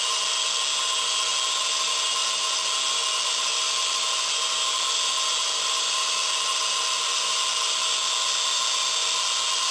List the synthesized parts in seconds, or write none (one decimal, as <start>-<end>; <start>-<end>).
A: none